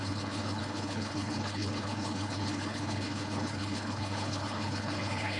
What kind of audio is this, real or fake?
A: fake